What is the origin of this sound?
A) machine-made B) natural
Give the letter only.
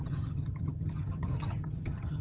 A